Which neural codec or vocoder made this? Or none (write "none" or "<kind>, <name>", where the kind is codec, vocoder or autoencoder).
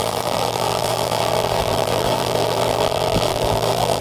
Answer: vocoder, BigVGAN v2